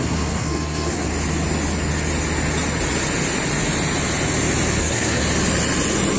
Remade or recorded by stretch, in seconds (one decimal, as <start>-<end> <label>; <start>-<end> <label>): 0.0-1.1 remade; 1.1-4.8 recorded; 4.8-5.2 remade; 5.2-6.2 recorded